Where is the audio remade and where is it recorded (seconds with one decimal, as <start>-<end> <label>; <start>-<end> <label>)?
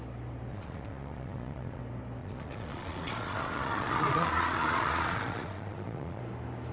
0.0-0.5 recorded; 0.5-1.8 remade; 1.8-2.2 recorded; 2.2-6.2 remade; 6.2-6.7 recorded